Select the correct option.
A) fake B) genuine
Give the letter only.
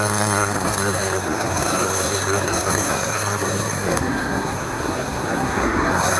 A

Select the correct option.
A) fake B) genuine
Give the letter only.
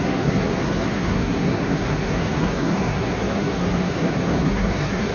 A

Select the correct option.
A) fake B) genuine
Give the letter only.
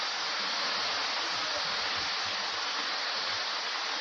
B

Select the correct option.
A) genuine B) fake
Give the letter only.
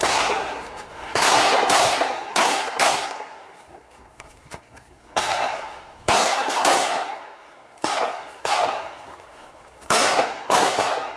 B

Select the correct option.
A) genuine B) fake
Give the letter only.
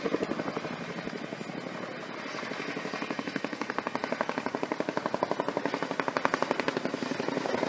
A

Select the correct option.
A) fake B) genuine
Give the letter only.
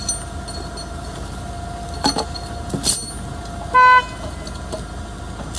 B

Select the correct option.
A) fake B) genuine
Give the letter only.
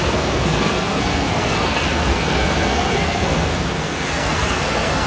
A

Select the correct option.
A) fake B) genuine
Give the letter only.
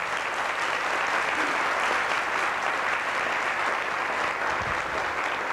B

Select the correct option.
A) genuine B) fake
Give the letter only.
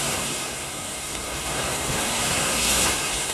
B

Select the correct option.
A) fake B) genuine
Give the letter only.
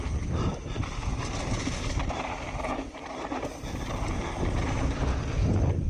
B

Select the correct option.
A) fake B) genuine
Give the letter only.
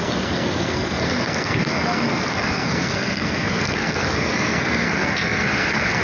A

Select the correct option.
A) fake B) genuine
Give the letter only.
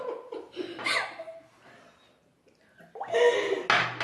B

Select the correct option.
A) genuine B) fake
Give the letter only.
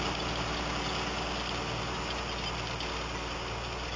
A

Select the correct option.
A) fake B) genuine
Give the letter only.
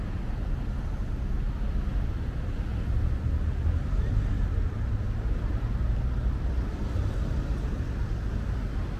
B